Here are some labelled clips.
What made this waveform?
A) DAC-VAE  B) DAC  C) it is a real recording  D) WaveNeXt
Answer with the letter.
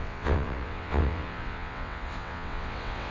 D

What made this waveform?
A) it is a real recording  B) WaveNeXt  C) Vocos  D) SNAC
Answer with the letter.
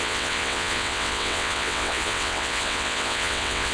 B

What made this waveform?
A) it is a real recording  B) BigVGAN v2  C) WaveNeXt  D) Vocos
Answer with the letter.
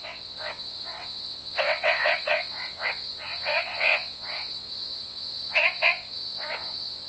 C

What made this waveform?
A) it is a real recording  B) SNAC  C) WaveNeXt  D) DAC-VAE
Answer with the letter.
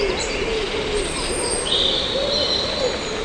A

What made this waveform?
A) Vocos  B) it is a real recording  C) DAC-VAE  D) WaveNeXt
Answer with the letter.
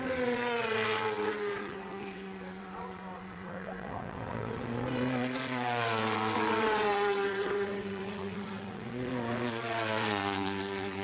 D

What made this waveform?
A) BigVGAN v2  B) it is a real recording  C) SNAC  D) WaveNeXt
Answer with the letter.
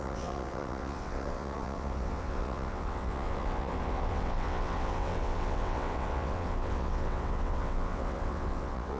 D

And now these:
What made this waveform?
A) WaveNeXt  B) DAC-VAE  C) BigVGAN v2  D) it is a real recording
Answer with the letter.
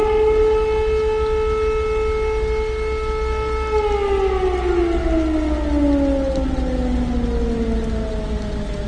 D